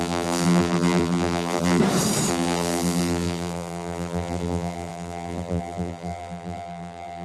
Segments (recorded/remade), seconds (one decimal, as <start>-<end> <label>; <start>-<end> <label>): 0.0-1.8 remade; 1.8-2.3 recorded; 2.3-7.2 remade